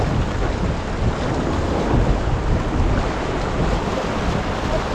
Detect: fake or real real